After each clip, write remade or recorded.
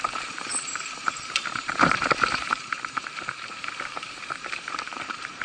remade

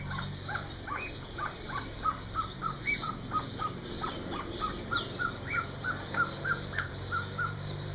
remade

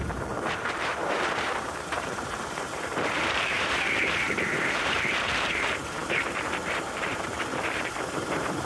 remade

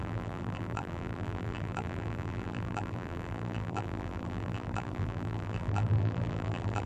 remade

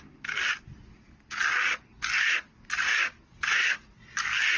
recorded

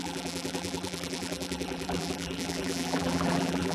remade